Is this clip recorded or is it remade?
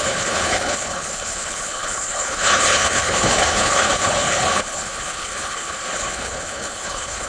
remade